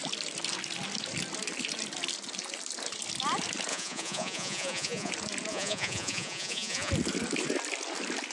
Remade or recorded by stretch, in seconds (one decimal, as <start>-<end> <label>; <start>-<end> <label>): 0.0-3.7 recorded; 3.7-5.1 remade; 5.1-5.5 recorded; 5.5-6.9 remade; 6.9-8.3 recorded